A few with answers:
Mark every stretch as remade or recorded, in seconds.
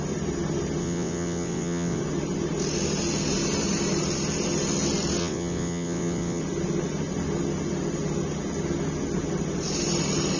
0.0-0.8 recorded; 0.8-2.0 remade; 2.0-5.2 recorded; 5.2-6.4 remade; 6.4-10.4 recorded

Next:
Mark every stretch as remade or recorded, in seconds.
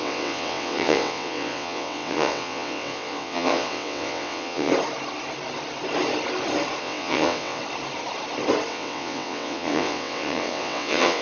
0.0-4.7 remade; 4.7-6.8 recorded; 6.8-7.6 remade; 7.6-8.7 recorded; 8.7-11.2 remade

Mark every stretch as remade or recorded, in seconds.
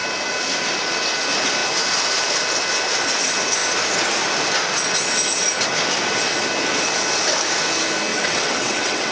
0.0-8.1 recorded; 8.1-9.1 remade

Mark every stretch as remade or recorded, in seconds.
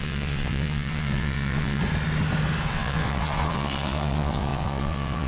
0.0-1.8 remade; 1.8-2.7 recorded; 2.7-5.3 remade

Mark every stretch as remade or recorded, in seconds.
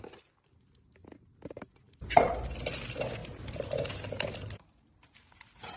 0.0-5.8 recorded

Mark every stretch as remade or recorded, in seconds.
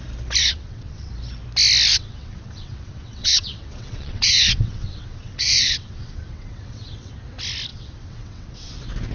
0.0-0.4 recorded; 0.4-1.1 remade; 1.1-1.9 recorded; 1.9-7.1 remade; 7.1-7.7 recorded; 7.7-8.7 remade; 8.7-9.1 recorded